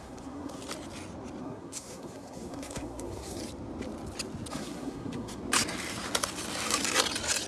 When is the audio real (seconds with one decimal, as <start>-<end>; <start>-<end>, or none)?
0.6-1.4; 3.4-4.5; 5.4-7.5